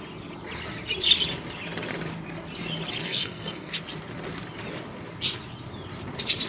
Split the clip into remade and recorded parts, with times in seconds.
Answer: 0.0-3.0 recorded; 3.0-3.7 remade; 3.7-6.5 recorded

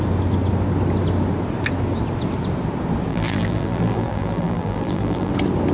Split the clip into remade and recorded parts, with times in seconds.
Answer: 0.0-3.1 recorded; 3.1-5.3 remade; 5.3-5.7 recorded

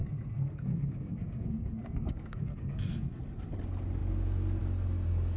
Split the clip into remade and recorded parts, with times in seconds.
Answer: 0.0-3.2 remade; 3.2-5.4 recorded